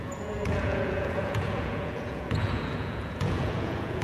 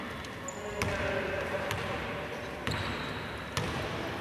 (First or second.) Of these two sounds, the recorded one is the second